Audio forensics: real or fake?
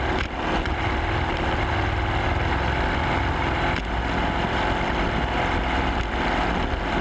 real